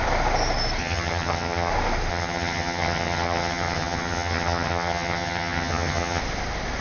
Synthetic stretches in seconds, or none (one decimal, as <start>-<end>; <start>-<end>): 0.8-1.7; 2.1-6.2